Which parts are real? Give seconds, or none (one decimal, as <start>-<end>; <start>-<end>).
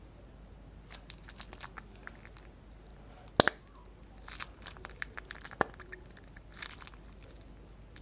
0.0-8.0